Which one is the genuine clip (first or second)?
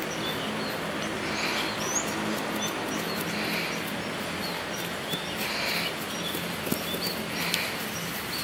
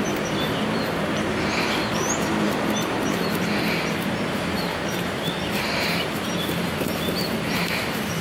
first